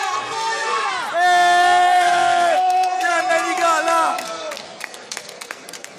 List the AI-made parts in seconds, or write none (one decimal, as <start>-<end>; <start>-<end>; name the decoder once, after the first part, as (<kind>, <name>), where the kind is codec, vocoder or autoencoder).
0.0-0.9 (codec, SNAC); 1.8-3.3; 4.1-6.0